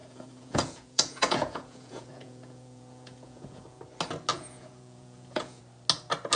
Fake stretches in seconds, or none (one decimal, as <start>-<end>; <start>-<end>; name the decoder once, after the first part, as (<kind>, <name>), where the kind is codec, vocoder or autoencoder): 0.0-3.8 (vocoder, Vocos); 4.3-5.6